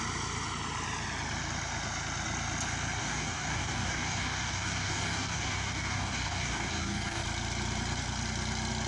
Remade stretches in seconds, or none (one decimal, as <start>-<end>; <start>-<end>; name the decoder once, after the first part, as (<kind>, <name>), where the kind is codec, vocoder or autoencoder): 3.0-7.2 (codec, DAC)